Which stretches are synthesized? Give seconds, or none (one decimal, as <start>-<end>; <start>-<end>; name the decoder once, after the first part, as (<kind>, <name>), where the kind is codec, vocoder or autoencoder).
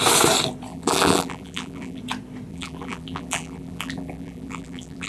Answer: 0.7-2.0 (vocoder, BigVGAN v2); 2.5-5.1